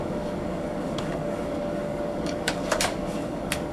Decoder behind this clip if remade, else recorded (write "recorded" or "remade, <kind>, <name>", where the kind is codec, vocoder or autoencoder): remade, codec, DAC